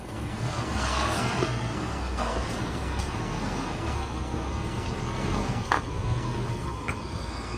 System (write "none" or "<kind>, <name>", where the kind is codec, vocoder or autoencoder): codec, SNAC